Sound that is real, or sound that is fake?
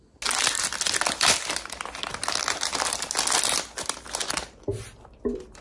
real